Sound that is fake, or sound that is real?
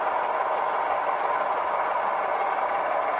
real